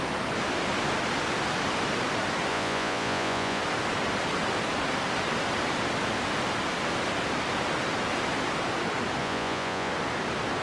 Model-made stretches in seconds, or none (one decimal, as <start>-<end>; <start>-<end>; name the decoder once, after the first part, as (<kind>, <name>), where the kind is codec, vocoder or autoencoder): 2.5-3.6 (vocoder, Vocos); 9.2-9.9